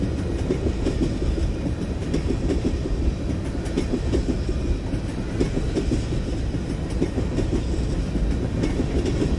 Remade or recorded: recorded